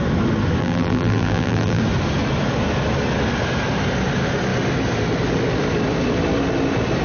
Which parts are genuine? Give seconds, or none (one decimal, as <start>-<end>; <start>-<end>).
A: 0.0-0.6; 1.8-7.0